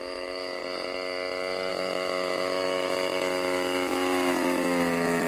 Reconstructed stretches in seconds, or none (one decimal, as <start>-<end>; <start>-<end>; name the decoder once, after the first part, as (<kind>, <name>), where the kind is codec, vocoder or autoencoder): 0.0-0.6 (autoencoder, DAC-VAE); 1.7-5.3